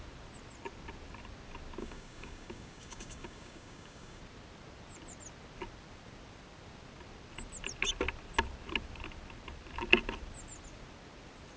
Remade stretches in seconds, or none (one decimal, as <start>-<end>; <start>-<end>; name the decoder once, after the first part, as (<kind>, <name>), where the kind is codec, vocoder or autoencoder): 1.8-4.2 (codec, DAC)